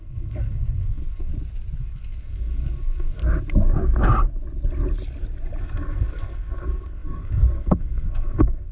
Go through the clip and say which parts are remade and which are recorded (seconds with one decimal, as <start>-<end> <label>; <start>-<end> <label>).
0.0-1.3 remade; 1.3-1.8 recorded; 1.8-3.2 remade; 3.2-5.6 recorded; 5.6-8.7 remade